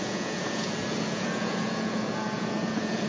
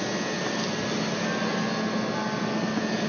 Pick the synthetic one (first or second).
first